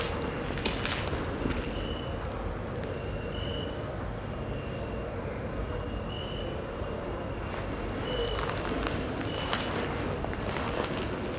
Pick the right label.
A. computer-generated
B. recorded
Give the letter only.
B